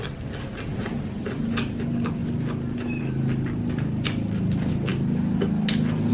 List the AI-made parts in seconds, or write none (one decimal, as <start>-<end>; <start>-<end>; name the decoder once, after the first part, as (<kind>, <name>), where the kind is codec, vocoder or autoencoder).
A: none